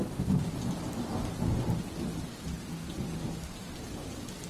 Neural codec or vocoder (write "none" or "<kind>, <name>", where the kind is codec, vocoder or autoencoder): none